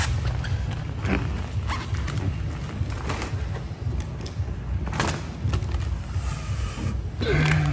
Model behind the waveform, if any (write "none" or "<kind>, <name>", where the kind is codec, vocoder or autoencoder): none